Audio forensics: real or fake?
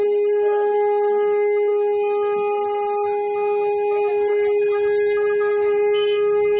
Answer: real